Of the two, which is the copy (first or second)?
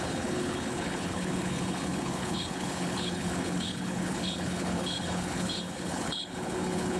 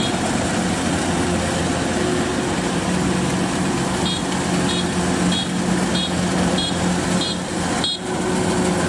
first